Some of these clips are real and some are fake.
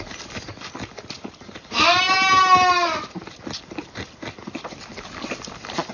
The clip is real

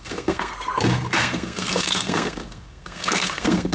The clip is fake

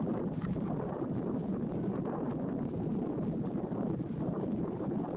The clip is real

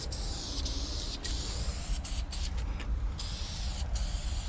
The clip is real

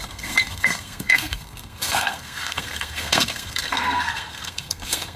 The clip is fake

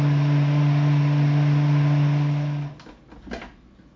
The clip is real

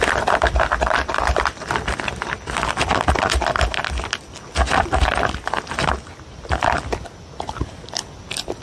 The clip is real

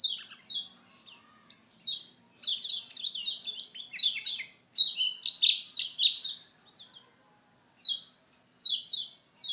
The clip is real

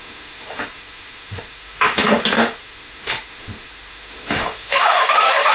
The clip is fake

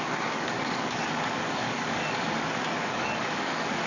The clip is fake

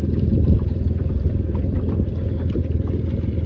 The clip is fake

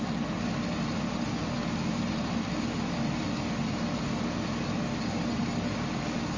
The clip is real